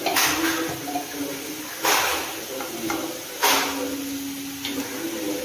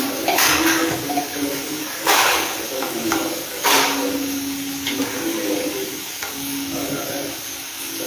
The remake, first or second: second